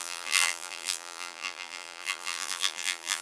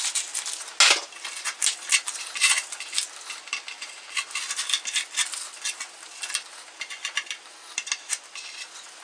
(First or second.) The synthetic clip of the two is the first